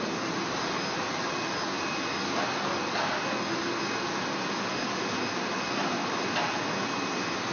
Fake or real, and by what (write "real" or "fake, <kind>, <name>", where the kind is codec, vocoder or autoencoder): real